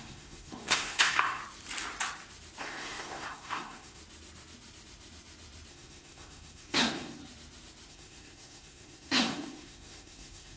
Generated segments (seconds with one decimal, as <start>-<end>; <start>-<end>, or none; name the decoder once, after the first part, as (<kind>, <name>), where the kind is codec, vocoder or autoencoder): 0.0-1.4 (codec, SNAC); 2.6-4.0; 5.7-7.2; 7.9-10.6